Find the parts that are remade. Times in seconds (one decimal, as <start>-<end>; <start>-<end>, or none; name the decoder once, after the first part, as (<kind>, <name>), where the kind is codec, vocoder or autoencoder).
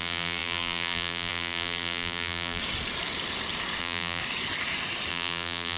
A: 0.0-2.6 (vocoder, BigVGAN v2); 3.8-4.2; 5.1-5.8